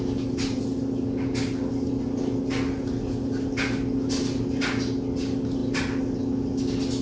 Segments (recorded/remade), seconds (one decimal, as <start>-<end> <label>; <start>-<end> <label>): 0.0-7.0 recorded